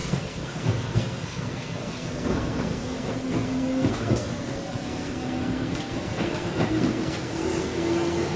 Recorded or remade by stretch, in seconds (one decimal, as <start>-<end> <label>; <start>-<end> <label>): 0.0-8.4 remade